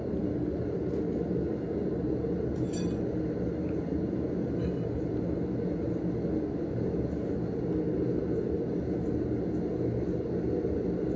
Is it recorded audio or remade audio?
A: recorded